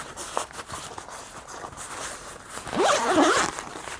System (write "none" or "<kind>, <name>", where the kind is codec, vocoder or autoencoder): none